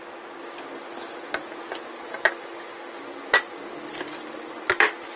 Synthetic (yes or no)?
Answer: no